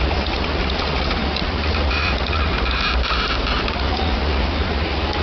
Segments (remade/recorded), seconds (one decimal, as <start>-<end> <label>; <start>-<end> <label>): 0.0-2.5 remade; 2.5-3.7 recorded; 3.7-5.2 remade